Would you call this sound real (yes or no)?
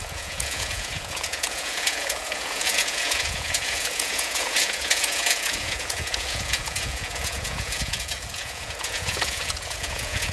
no